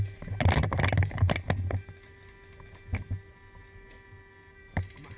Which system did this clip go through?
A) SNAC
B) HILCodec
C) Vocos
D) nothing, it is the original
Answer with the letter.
D